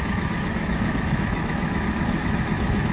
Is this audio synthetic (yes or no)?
yes